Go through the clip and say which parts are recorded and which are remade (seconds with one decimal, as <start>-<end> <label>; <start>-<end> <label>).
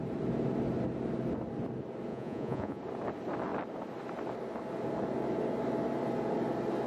0.0-2.1 recorded; 2.1-2.8 remade; 2.8-6.9 recorded